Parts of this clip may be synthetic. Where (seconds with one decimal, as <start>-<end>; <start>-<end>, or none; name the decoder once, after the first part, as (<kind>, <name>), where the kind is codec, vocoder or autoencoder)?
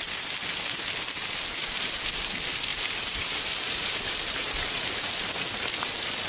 1.6-2.2 (vocoder, BigVGAN v2); 2.7-5.1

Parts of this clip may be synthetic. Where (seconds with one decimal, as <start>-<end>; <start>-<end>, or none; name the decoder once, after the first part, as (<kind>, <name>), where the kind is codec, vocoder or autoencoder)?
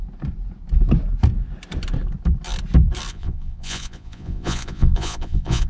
3.1-5.7 (vocoder, Vocos)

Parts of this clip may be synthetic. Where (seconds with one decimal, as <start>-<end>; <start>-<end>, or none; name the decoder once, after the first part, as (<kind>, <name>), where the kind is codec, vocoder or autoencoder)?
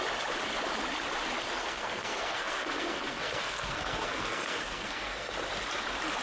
1.6-5.3 (codec, SNAC)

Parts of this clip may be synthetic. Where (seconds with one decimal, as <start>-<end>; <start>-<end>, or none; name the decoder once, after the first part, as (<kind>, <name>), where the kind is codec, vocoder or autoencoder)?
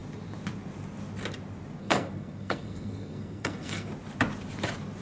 1.8-3.9 (codec, SNAC)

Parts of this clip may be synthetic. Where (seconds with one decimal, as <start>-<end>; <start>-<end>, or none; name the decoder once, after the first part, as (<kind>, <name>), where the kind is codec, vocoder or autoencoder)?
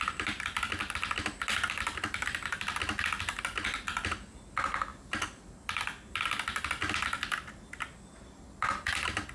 none